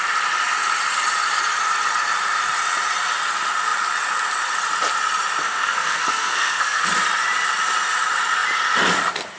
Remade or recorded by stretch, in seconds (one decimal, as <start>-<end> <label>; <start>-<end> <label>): 0.0-5.4 recorded; 5.4-6.9 remade; 6.9-9.4 recorded